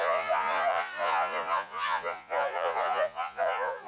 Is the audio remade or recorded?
remade